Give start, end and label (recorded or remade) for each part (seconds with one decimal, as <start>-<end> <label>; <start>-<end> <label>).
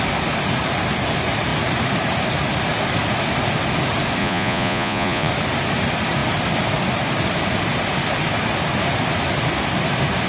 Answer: 0.0-4.2 recorded; 4.2-5.3 remade; 5.3-10.3 recorded